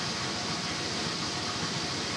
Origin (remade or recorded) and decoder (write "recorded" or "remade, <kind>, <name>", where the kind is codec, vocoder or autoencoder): recorded